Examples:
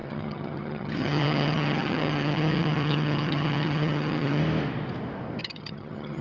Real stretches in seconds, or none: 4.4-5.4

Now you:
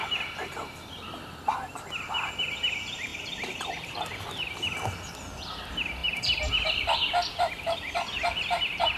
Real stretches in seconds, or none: 3.1-3.6; 6.0-7.3

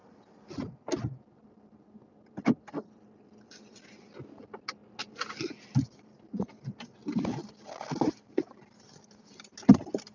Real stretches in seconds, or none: 0.0-10.1

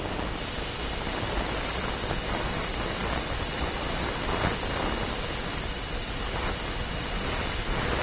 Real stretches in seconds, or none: 0.0-8.0